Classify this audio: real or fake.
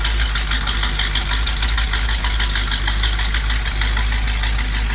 real